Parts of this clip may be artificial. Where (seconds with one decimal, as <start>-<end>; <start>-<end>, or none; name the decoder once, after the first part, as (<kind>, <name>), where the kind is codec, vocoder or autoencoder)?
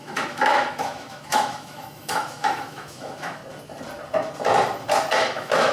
0.0-3.4 (autoencoder, DAC-VAE); 5.2-5.7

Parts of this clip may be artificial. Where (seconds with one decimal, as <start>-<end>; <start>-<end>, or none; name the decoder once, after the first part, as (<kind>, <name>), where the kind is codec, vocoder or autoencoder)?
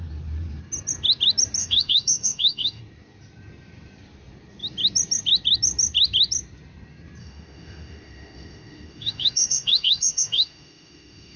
1.6-2.8 (autoencoder, DAC-VAE); 7.2-11.4